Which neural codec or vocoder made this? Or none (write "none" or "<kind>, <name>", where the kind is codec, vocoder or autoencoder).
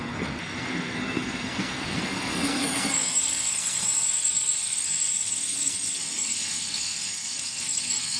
codec, SNAC